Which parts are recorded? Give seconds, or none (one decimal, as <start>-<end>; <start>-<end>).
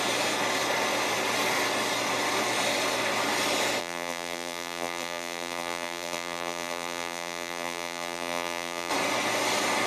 0.0-3.8; 8.9-9.9